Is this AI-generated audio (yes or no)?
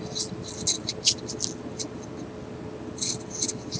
no